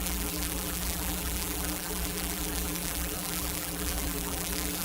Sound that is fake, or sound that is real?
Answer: fake